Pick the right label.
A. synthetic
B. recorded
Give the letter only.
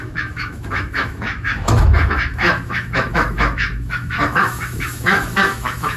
A